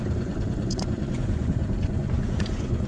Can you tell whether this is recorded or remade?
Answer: remade